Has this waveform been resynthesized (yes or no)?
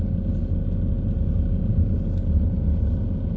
no